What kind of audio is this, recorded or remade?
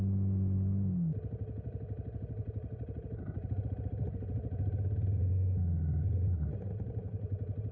recorded